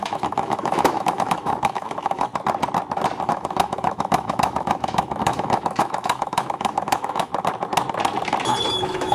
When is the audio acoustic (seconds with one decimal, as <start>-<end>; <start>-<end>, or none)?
2.3-3.2; 7.3-8.7

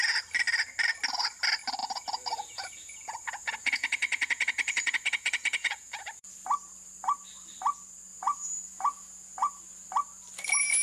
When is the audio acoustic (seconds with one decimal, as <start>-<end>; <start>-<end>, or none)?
0.0-1.8; 6.3-8.1; 9.6-10.8

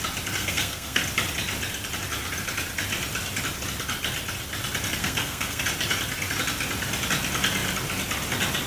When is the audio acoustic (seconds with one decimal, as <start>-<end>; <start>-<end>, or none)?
0.0-0.4; 1.0-5.0; 5.6-8.7

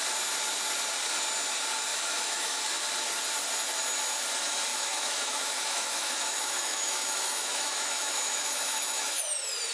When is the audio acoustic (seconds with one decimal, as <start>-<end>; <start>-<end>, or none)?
0.0-1.9; 2.6-4.7; 9.2-9.7